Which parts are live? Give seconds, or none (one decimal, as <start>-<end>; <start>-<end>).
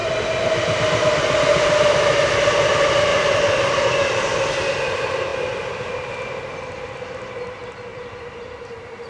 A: 0.0-3.1; 3.9-7.9